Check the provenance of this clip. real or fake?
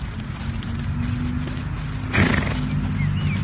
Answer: real